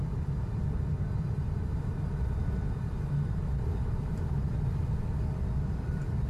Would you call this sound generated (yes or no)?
no